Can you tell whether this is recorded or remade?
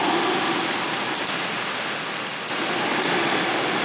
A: recorded